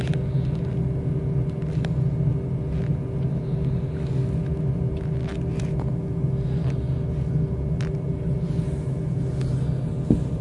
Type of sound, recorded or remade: recorded